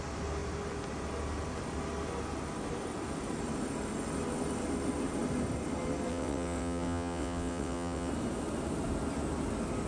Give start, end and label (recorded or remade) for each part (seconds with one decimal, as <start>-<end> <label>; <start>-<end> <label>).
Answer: 0.0-6.1 recorded; 6.1-8.1 remade; 8.1-9.9 recorded